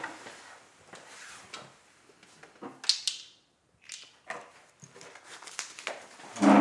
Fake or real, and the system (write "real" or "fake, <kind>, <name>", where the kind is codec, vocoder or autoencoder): real